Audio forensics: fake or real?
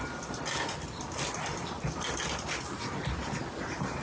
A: real